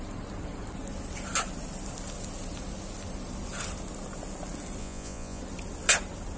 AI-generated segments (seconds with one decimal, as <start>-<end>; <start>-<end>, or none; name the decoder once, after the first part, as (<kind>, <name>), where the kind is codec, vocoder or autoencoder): 4.8-5.4 (vocoder, Vocos)